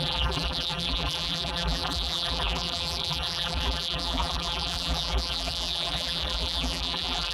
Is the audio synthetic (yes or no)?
yes